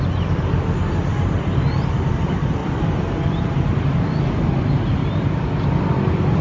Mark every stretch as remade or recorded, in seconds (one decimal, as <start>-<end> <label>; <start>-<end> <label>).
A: 0.0-2.6 recorded; 2.6-6.4 remade